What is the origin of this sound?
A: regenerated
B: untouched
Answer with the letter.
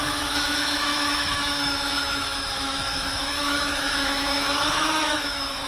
A